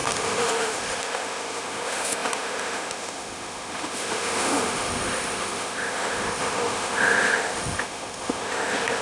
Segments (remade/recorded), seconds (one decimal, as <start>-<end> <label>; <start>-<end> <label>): 0.0-9.0 remade